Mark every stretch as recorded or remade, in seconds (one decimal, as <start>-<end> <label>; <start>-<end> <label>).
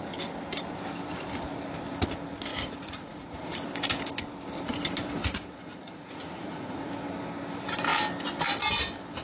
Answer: 0.0-2.5 recorded; 2.5-3.6 remade; 3.6-5.2 recorded; 5.2-6.9 remade; 6.9-9.2 recorded